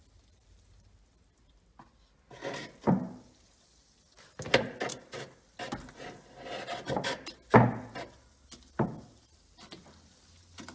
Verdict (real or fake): real